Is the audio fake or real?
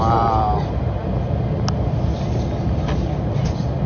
real